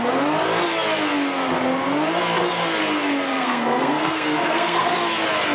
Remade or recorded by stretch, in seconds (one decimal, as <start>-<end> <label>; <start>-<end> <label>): 0.0-3.3 recorded; 3.3-4.9 remade; 4.9-5.5 recorded